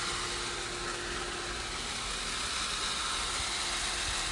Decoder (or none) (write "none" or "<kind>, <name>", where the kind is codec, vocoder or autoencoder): none